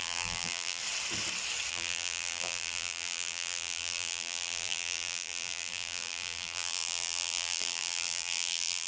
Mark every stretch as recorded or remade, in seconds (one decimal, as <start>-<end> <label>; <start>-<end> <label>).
0.0-0.8 remade; 0.8-1.7 recorded; 1.7-8.9 remade